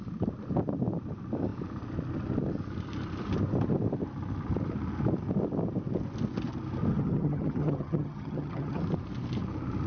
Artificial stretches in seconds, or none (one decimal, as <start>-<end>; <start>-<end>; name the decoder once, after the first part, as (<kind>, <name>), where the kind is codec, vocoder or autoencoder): 6.9-8.8 (vocoder, HiFi-GAN)